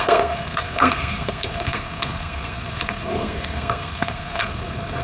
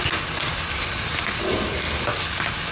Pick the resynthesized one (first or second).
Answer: first